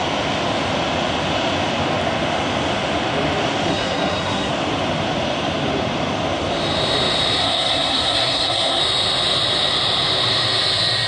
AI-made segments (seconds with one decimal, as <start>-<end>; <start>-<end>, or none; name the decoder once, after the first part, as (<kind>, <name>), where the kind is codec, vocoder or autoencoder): 3.7-4.5 (codec, SNAC); 7.4-8.8